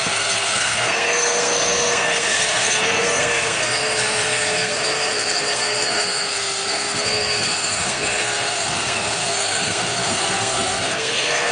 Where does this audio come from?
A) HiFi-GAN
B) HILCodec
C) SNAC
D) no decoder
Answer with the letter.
C